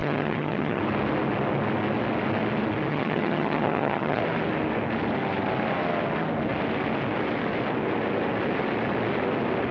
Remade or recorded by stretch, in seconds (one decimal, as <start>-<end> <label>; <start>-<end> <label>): 0.0-0.8 remade; 0.8-2.9 recorded; 2.9-4.2 remade; 4.2-9.7 recorded